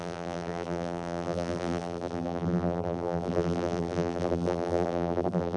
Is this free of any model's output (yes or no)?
no